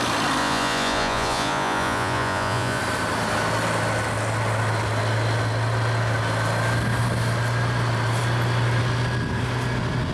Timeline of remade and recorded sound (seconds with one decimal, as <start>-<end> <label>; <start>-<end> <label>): 0.0-0.4 recorded; 0.4-2.8 remade; 2.8-10.1 recorded